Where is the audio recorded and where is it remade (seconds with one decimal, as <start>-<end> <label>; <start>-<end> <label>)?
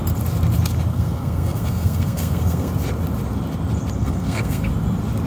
0.0-0.9 recorded; 0.9-2.7 remade; 2.7-4.0 recorded; 4.0-4.7 remade; 4.7-5.3 recorded